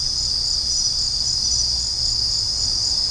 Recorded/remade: recorded